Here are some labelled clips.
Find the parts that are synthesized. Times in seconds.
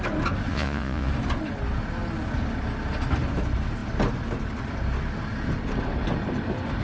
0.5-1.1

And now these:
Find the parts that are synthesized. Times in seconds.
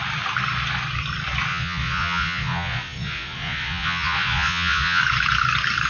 1.5-5.0